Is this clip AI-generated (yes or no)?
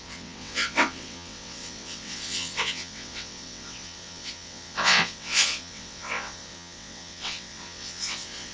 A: yes